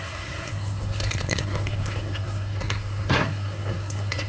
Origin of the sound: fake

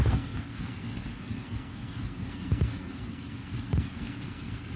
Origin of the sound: fake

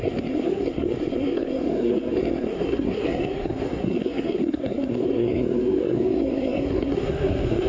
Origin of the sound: fake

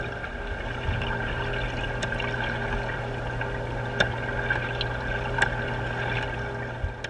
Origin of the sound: real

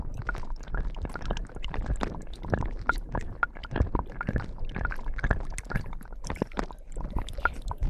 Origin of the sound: real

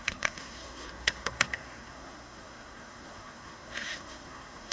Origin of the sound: fake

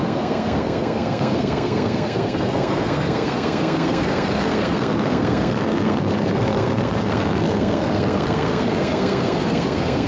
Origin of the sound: fake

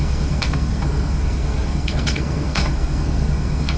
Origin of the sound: fake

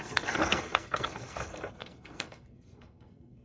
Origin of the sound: fake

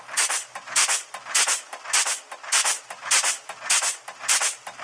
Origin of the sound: real